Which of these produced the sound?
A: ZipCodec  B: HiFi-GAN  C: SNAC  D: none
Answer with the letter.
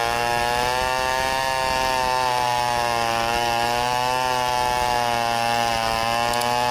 D